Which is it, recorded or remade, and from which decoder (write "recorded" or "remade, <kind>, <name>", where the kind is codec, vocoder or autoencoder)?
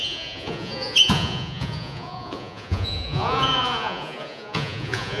remade, vocoder, Vocos